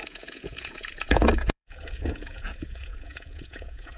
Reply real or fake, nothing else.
fake